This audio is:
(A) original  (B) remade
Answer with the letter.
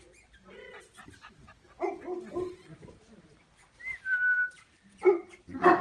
A